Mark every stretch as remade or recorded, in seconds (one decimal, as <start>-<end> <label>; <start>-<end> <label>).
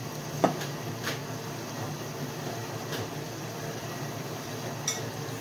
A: 0.0-2.6 recorded; 2.6-4.5 remade; 4.5-5.4 recorded